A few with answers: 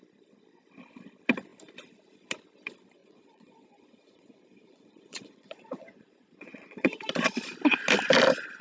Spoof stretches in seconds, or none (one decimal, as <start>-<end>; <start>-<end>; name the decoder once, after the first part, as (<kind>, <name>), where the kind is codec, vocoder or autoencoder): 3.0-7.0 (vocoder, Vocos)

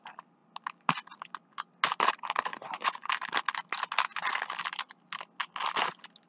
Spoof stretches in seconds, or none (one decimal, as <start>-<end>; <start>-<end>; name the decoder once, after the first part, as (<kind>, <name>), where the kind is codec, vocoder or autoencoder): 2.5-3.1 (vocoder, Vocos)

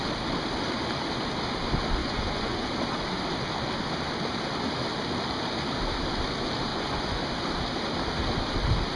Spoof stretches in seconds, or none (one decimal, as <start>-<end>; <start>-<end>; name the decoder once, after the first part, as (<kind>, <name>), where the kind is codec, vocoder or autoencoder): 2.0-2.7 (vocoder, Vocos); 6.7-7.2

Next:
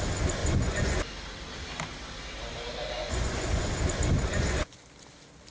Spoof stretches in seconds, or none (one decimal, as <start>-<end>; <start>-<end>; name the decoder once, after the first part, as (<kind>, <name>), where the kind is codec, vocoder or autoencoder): 0.4-1.0 (vocoder, Vocos); 3.0-3.8; 4.3-4.8

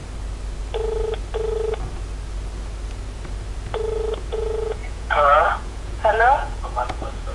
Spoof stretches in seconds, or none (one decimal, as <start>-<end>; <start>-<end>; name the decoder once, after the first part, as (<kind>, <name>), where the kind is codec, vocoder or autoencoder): 4.3-7.3 (vocoder, Vocos)

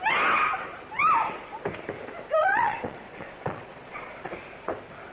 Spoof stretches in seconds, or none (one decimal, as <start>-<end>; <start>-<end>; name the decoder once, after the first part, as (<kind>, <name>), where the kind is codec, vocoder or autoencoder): 2.4-4.3 (vocoder, Vocos)

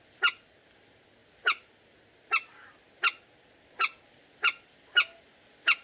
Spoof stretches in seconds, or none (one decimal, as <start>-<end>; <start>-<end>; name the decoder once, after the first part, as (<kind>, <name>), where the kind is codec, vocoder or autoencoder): none

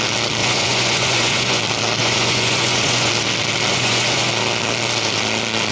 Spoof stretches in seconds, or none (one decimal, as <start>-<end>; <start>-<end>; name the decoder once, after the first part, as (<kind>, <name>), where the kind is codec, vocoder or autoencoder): 0.4-1.6 (vocoder, Vocos); 2.0-3.1; 3.7-4.3